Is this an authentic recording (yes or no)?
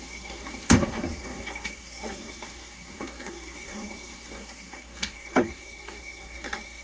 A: no